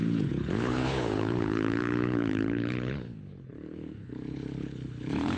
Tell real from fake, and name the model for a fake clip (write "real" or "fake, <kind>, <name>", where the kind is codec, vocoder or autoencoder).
fake, codec, HILCodec